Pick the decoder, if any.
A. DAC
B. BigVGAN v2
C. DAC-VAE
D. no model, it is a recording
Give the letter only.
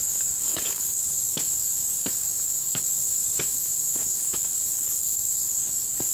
A